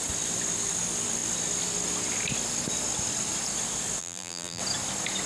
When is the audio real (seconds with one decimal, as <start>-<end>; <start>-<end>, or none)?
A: 0.0-4.0; 4.6-5.3